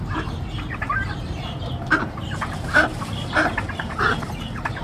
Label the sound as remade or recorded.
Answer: remade